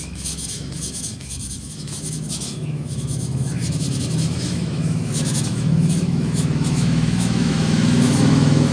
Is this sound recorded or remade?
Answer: remade